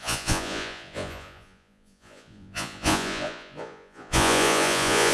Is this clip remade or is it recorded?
remade